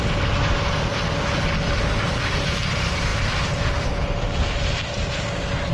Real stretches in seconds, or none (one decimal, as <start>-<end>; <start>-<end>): 0.0-5.7